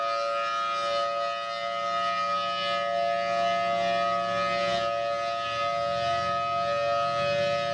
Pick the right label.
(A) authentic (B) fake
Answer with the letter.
A